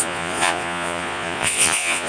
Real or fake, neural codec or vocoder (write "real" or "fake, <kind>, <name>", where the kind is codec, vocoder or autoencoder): fake, vocoder, Vocos